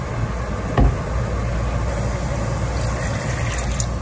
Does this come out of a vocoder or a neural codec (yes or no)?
no